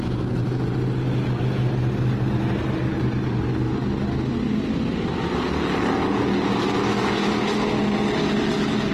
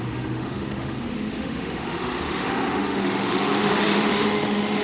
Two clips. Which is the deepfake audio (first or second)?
second